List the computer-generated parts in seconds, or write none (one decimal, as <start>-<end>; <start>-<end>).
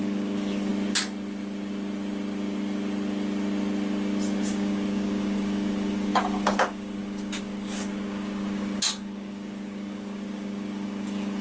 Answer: 0.0-0.7; 4.5-11.4